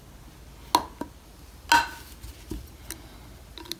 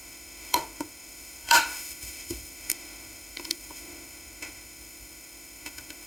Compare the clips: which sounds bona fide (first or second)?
first